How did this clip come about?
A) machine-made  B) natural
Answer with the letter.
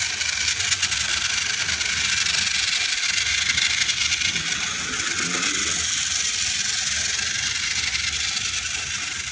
B